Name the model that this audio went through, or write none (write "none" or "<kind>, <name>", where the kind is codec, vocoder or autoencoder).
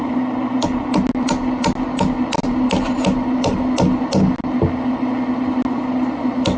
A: none